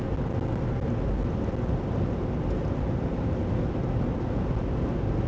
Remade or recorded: recorded